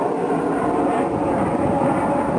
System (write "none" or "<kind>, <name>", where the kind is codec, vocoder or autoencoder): none